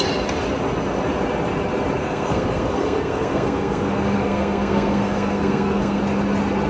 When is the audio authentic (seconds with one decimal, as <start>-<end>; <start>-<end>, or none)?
0.0-2.0; 6.0-6.7